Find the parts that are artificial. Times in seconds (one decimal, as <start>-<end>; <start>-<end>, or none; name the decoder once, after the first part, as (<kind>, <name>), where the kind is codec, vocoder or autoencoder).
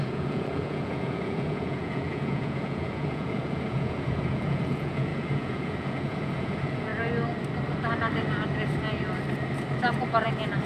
0.0-6.9 (vocoder, Vocos)